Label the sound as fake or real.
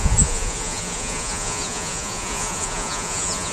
fake